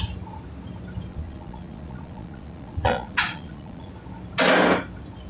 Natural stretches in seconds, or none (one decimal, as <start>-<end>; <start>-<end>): 0.0-1.1; 3.9-5.3